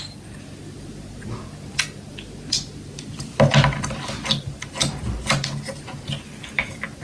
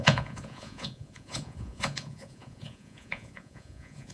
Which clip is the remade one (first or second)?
second